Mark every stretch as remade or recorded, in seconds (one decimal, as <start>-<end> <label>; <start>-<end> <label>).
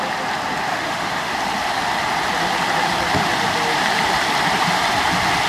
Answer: 0.0-0.7 recorded; 0.7-1.3 remade; 1.3-5.5 recorded